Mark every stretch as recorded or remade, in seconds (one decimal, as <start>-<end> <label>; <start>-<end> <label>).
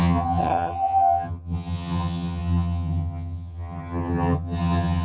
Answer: 0.0-5.0 remade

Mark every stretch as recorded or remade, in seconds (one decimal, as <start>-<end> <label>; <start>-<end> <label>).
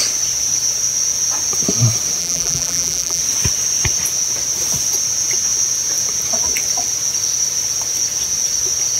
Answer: 0.0-2.2 recorded; 2.2-3.2 remade; 3.2-9.0 recorded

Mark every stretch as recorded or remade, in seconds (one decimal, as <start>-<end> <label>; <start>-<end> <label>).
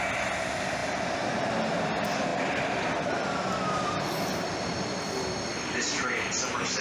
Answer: 0.0-0.8 recorded; 0.8-1.3 remade; 1.3-2.3 recorded; 2.3-5.1 remade; 5.1-6.8 recorded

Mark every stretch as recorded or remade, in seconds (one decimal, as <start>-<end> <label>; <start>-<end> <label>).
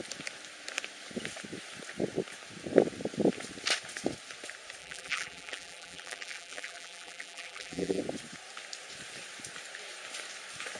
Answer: 0.0-4.8 recorded; 4.8-8.0 remade; 8.0-10.8 recorded